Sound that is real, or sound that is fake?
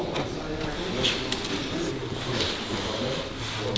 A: real